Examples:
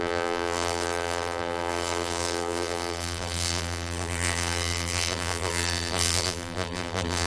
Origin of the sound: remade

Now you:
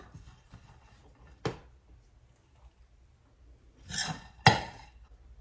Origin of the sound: recorded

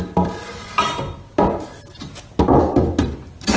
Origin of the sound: recorded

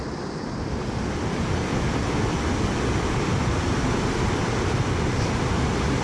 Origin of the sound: recorded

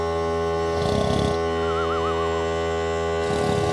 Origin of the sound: recorded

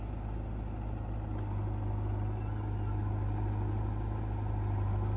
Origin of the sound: recorded